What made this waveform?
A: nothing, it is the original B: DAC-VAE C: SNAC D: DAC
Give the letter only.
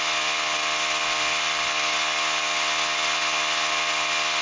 A